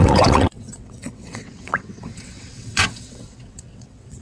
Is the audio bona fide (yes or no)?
no